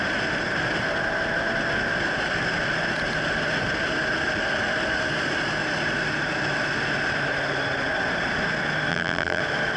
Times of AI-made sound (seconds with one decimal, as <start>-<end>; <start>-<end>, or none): 8.9-9.4